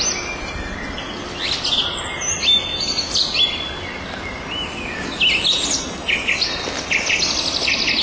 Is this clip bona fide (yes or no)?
yes